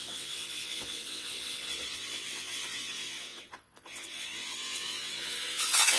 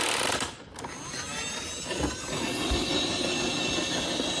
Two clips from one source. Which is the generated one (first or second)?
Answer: first